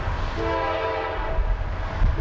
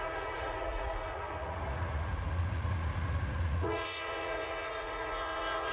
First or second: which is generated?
second